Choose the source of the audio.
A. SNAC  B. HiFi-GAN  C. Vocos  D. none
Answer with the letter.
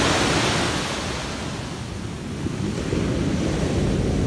D